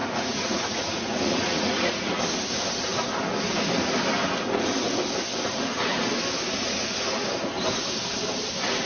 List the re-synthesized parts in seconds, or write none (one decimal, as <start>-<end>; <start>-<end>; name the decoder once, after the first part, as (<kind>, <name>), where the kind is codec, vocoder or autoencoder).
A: 0.0-2.2 (vocoder, Vocos)